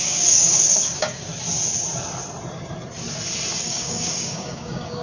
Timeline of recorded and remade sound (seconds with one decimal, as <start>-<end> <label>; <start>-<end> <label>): 0.0-1.3 remade; 1.3-3.6 recorded; 3.6-5.0 remade